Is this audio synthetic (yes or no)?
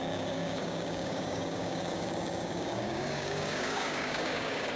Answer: yes